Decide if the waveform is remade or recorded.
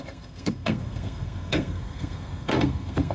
remade